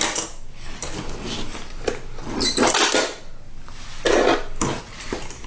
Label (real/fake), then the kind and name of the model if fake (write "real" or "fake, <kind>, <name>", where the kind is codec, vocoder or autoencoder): real